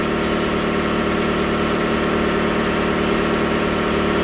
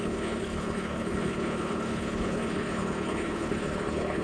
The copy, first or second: second